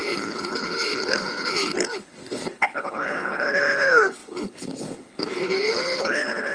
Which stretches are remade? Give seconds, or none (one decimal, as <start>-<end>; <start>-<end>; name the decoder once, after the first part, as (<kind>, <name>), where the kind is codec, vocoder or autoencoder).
0.0-6.5 (codec, HILCodec)